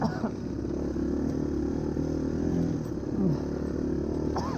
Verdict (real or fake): real